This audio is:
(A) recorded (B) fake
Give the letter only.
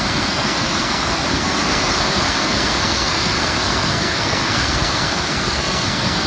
B